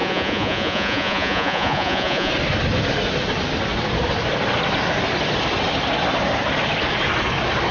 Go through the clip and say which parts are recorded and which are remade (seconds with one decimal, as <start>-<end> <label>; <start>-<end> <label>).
0.0-2.3 remade; 2.3-7.7 recorded